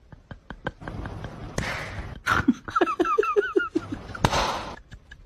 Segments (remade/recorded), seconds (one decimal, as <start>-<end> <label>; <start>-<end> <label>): 0.0-5.3 recorded